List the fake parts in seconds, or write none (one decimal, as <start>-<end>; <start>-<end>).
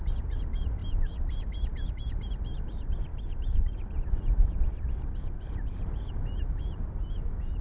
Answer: none